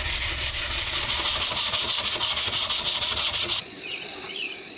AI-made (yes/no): yes